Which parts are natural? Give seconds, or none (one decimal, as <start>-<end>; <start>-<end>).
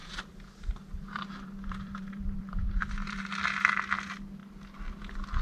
3.2-5.4